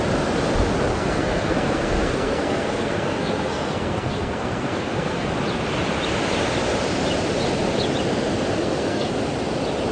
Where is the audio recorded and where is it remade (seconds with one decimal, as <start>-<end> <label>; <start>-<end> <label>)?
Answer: 0.0-0.9 recorded; 0.9-5.3 remade; 5.3-8.6 recorded; 8.6-9.1 remade; 9.1-9.9 recorded